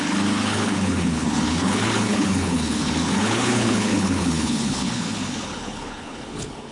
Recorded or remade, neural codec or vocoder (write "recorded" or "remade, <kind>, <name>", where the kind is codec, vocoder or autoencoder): remade, codec, HILCodec